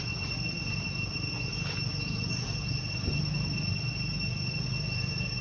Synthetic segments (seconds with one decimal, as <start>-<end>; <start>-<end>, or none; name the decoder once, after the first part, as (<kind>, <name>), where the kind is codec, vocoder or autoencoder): none